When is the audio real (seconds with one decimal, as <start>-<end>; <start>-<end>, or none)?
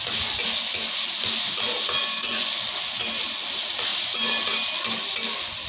0.0-2.0; 2.5-5.7